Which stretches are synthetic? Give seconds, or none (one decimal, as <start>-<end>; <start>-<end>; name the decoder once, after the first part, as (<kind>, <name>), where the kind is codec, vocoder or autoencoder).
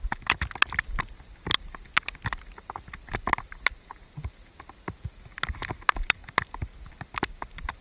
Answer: none